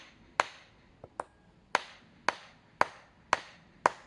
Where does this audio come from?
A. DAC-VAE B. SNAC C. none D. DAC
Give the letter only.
C